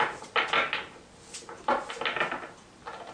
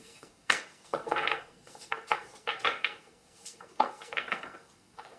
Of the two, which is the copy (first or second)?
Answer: second